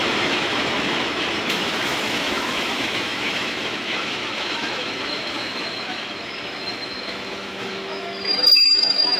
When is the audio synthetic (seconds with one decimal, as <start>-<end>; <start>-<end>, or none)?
0.0-9.2